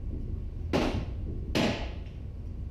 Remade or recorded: recorded